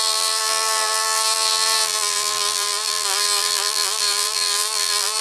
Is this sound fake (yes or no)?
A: yes